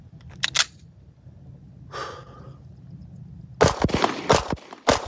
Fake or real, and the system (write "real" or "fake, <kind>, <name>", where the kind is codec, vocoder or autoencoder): real